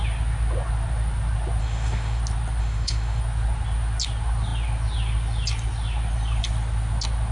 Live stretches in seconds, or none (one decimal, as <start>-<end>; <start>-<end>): 0.0-1.6; 2.2-2.6; 3.2-7.3